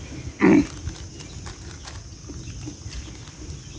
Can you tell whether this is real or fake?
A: real